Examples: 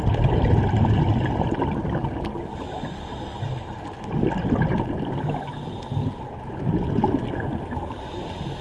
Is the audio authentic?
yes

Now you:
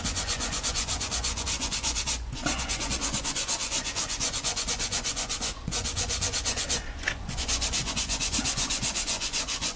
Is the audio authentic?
no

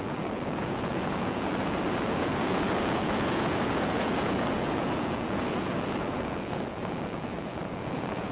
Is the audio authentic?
no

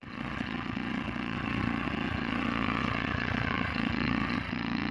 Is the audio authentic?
no